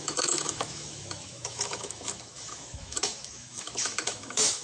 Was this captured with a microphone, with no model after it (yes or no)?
no